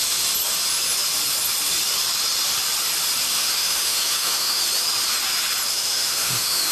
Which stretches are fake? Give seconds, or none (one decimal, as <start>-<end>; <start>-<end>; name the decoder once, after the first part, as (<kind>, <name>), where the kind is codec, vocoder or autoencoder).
3.3-4.6 (autoencoder, DAC-VAE); 5.7-6.7